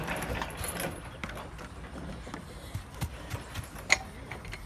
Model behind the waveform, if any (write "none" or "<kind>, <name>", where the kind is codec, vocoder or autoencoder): none